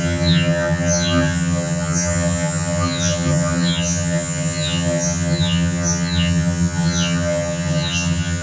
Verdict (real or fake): fake